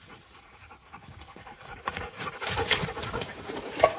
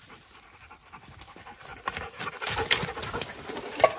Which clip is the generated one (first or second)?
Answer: first